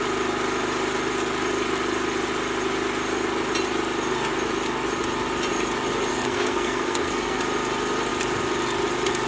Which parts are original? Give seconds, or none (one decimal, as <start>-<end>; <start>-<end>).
0.0-6.1; 7.4-9.3